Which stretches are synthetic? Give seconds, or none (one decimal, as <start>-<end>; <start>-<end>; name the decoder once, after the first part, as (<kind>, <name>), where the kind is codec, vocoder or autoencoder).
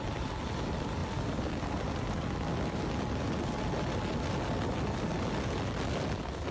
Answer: none